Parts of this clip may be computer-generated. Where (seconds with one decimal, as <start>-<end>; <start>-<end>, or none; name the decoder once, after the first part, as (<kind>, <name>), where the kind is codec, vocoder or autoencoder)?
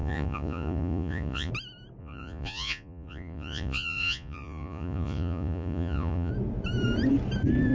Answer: 0.0-1.5 (vocoder, Vocos); 2.0-6.3